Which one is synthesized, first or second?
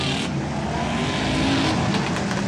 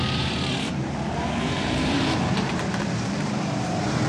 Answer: second